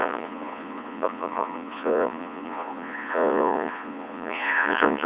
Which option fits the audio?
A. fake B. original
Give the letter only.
A